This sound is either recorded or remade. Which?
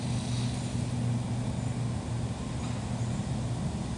recorded